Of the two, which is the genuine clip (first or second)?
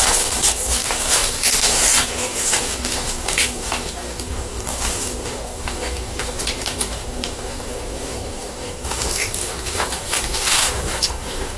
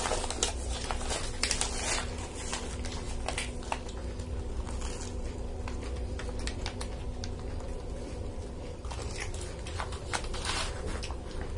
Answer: second